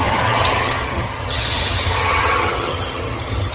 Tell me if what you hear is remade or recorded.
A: remade